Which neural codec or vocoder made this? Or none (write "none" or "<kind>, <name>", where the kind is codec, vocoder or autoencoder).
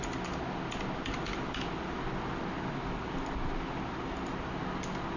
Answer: none